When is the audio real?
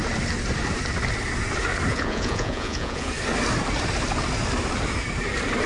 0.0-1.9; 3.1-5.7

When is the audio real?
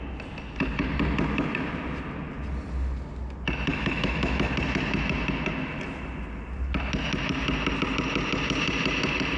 0.0-3.7; 4.5-9.4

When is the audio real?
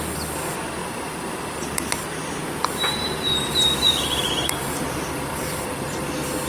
0.0-0.8; 1.8-2.4; 6.1-6.5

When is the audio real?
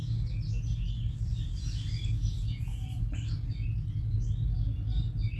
0.0-5.4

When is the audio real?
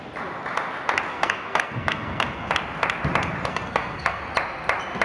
0.0-1.1; 2.5-3.5; 4.2-5.0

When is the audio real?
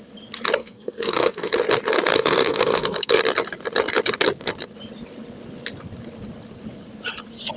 0.0-0.6; 1.5-2.1; 3.2-7.6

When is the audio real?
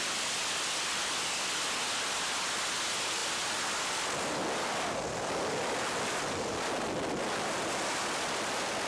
0.0-8.9